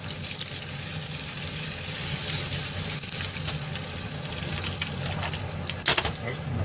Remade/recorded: recorded